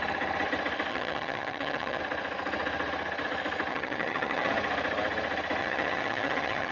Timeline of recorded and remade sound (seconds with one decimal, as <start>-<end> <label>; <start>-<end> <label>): 0.0-0.9 recorded; 0.9-2.0 remade; 2.0-3.7 recorded; 3.7-4.5 remade; 4.5-5.6 recorded; 5.6-6.7 remade